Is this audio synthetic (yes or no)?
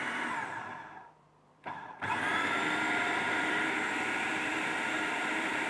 yes